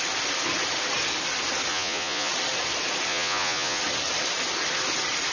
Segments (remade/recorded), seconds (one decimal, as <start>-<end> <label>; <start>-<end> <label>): 0.0-1.7 recorded; 1.7-2.3 remade; 2.3-3.1 recorded; 3.1-3.8 remade; 3.8-5.3 recorded